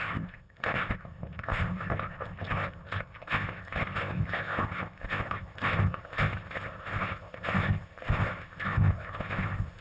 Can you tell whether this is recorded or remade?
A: remade